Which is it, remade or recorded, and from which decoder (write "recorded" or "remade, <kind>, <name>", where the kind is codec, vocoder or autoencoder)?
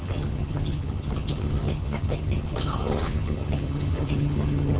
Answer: remade, vocoder, HiFi-GAN